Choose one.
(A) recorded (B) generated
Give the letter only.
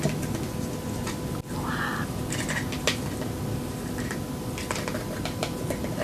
A